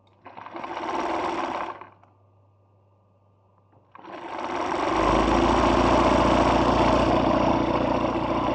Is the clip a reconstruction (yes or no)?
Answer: no